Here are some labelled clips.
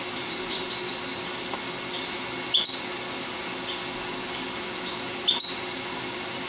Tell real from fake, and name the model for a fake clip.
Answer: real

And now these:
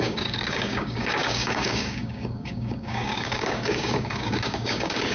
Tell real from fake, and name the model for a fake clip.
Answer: fake, codec, DAC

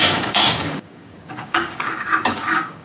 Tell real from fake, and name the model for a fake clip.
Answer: fake, codec, DAC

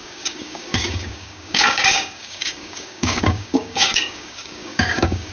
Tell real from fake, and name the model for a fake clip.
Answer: fake, codec, DAC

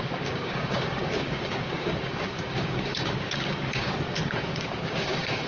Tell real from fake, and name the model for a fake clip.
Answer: fake, codec, DAC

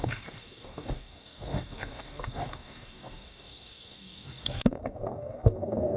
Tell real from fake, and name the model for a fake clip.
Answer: fake, codec, DAC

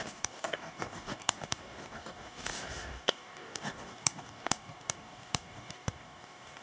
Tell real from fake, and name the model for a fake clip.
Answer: fake, codec, DAC